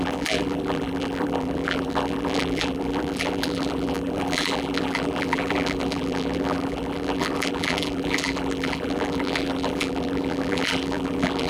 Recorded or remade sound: remade